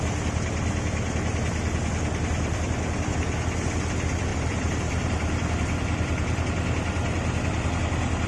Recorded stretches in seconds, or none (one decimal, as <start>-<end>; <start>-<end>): 0.0-4.3